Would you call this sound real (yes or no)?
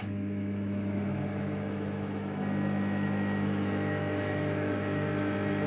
no